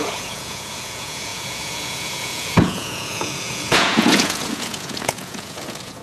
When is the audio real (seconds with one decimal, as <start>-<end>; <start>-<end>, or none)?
none